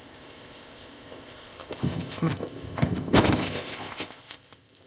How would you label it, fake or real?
fake